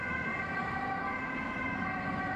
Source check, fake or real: fake